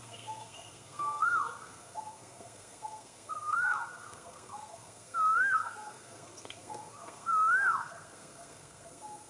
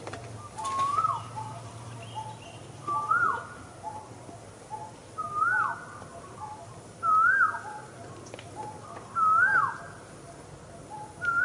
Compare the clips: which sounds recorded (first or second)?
second